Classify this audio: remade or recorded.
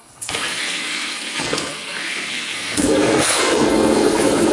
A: remade